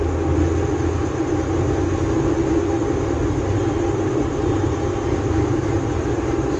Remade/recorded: recorded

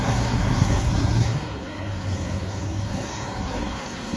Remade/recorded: remade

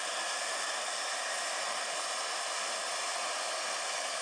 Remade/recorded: recorded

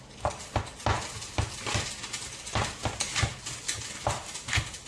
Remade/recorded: recorded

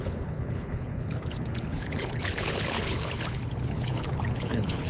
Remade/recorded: remade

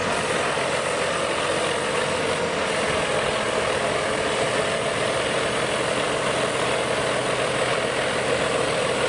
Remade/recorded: recorded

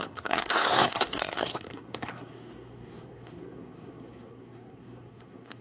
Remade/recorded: remade